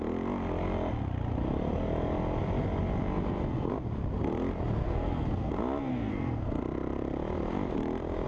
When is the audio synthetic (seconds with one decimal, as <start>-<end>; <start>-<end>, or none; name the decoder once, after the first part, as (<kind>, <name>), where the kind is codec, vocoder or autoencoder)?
4.8-5.5 (codec, SNAC); 5.9-6.6